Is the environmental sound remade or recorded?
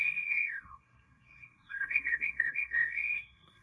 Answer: remade